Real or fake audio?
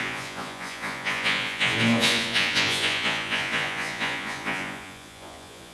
fake